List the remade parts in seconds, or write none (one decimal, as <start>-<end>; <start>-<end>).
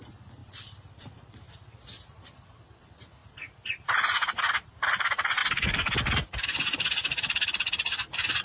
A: 0.4-1.8; 5.4-8.4